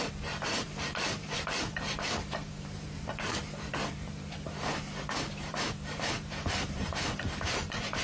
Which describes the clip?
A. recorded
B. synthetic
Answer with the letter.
B